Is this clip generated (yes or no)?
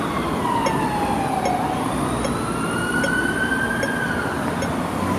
no